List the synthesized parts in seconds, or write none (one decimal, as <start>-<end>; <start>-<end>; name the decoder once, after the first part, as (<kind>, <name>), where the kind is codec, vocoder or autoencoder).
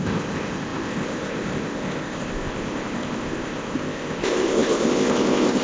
0.0-5.6 (codec, ZipCodec)